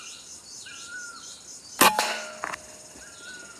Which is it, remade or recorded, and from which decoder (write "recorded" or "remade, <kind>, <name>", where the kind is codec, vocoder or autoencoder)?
recorded